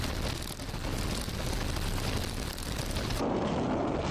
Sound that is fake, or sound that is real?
real